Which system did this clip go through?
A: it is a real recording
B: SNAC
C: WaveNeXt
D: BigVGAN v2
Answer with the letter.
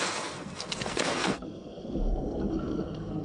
B